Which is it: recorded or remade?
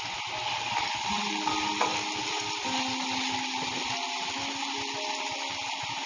recorded